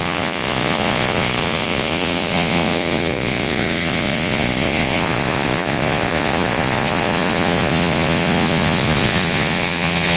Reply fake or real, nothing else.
fake